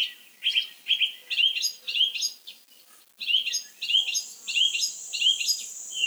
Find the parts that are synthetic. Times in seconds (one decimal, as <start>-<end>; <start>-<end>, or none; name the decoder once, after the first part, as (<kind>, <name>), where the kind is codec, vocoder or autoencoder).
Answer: 0.0-1.2 (vocoder, BigVGAN v2); 4.9-6.1